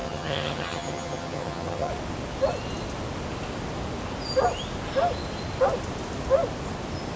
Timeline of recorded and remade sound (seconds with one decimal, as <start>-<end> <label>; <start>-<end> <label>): 0.0-1.9 remade; 1.9-7.2 recorded

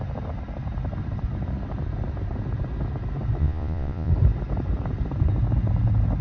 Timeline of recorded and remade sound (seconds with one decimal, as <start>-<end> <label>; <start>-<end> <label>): 0.0-3.4 recorded; 3.4-4.1 remade; 4.1-6.2 recorded

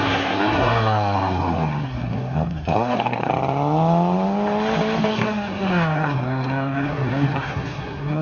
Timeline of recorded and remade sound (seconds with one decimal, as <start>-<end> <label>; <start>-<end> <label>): 0.0-3.3 remade; 3.3-5.1 recorded; 5.1-8.2 remade

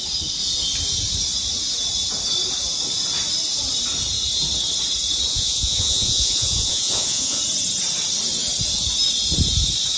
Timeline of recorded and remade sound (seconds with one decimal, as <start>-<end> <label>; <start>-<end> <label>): 0.0-5.3 recorded; 5.3-7.4 remade; 7.4-10.0 recorded